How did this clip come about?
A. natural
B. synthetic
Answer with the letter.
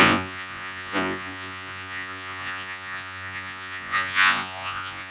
B